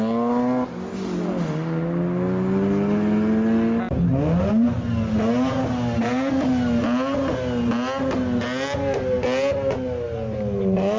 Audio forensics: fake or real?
real